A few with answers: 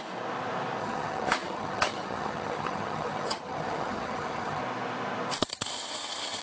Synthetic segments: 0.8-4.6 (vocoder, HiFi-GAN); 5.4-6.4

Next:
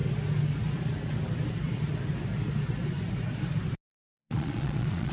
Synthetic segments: 3.9-5.1 (vocoder, Vocos)

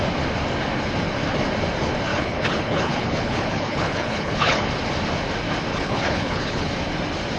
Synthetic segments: 2.1-4.7 (codec, HILCodec); 5.7-6.7